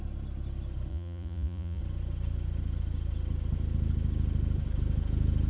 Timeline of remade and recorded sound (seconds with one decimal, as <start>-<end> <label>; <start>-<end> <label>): 0.0-0.9 recorded; 0.9-1.8 remade; 1.8-5.5 recorded

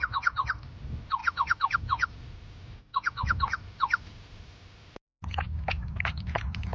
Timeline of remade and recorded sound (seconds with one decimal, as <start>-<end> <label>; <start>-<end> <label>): 0.0-6.7 recorded